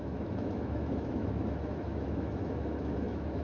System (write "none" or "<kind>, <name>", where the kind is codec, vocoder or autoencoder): autoencoder, DAC-VAE